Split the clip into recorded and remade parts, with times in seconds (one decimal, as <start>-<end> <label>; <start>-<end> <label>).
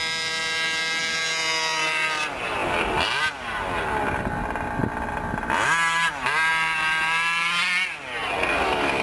0.0-9.0 recorded